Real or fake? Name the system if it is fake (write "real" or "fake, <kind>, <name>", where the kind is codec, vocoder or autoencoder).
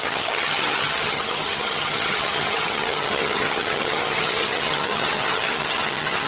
fake, vocoder, HiFi-GAN